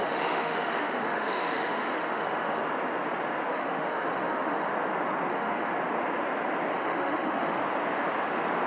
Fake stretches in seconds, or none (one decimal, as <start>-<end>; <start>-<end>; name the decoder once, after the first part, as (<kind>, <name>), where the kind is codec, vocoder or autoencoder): 0.0-2.6 (autoencoder, DAC-VAE); 3.5-4.7; 5.3-5.7; 6.7-7.6